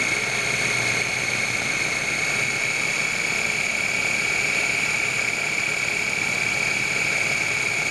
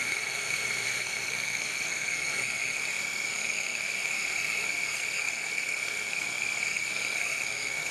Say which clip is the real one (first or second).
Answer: first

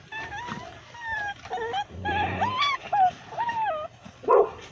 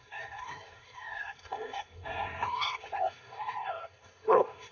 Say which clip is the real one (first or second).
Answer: first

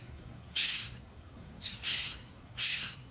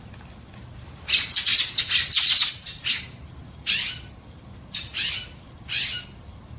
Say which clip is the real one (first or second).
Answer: second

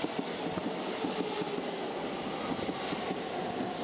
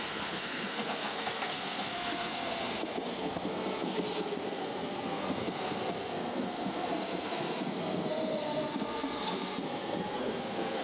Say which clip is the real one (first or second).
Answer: first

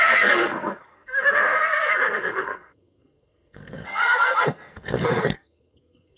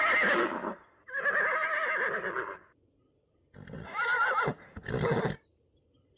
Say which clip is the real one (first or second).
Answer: second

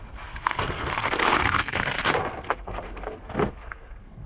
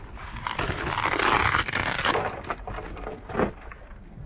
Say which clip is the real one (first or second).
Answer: second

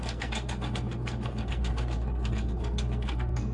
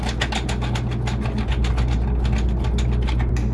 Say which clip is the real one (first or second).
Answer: second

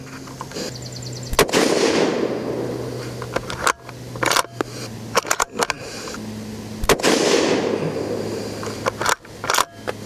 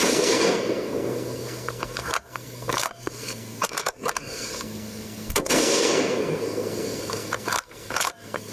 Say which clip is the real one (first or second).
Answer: first